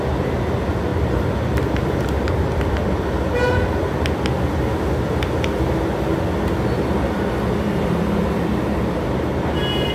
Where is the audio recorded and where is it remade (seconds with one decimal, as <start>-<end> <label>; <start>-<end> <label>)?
0.0-0.9 recorded; 0.9-2.7 remade; 2.7-9.9 recorded